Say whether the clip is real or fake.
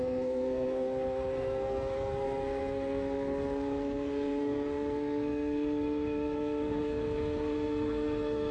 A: fake